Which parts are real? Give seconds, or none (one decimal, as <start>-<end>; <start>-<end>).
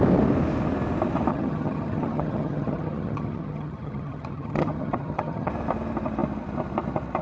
0.0-1.3; 5.5-7.2